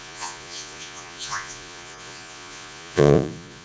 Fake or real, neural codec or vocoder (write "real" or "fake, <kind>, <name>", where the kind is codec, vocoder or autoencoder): fake, vocoder, Vocos